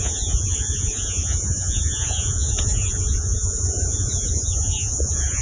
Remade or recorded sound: remade